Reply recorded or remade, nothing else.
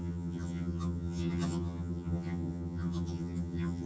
remade